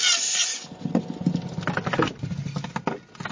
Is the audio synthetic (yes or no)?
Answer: no